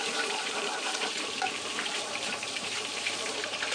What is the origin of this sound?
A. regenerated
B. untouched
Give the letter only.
A